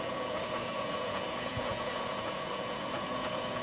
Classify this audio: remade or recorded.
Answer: remade